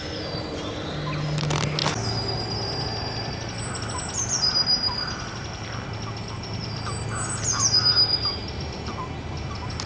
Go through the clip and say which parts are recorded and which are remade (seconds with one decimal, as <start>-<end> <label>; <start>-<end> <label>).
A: 0.0-9.9 recorded